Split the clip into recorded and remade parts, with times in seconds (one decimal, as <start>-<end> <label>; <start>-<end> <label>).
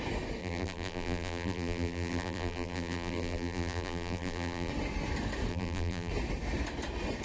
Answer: 0.0-0.4 recorded; 0.4-4.7 remade; 4.7-5.5 recorded; 5.5-6.1 remade; 6.1-7.2 recorded